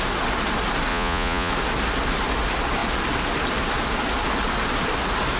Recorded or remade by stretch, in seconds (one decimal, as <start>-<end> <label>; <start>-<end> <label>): 0.0-0.9 recorded; 0.9-1.5 remade; 1.5-5.4 recorded